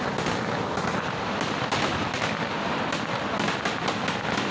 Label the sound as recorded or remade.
recorded